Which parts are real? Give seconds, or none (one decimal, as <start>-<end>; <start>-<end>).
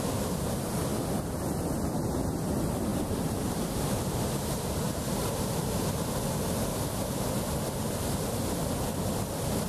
0.0-2.9; 6.1-9.7